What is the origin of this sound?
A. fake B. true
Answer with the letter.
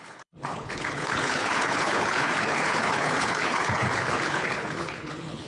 A